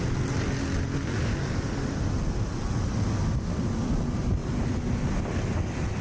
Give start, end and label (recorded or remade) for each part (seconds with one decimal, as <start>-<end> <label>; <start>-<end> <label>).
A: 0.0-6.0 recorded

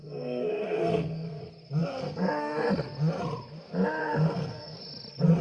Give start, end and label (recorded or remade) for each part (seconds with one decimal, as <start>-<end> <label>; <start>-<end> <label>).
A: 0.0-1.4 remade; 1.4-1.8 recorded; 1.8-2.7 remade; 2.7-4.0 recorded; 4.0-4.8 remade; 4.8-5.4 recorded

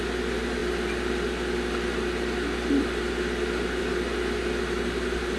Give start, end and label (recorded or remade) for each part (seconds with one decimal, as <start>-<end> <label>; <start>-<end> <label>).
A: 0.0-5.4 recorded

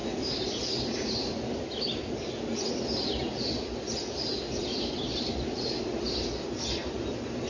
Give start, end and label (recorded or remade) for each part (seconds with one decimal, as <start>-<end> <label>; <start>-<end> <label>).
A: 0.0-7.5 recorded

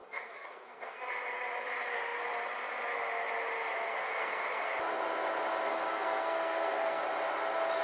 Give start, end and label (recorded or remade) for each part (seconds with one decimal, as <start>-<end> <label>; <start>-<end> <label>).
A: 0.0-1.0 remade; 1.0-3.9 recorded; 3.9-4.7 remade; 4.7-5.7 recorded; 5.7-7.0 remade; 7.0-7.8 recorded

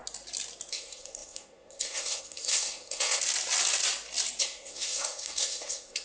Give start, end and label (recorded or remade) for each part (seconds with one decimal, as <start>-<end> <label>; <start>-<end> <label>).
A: 0.0-0.7 recorded; 0.7-3.2 remade; 3.2-4.4 recorded; 4.4-6.0 remade